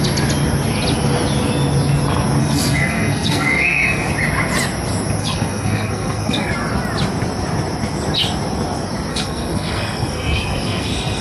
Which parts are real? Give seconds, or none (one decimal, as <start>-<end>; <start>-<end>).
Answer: 0.0-2.4; 4.1-5.2; 6.5-9.1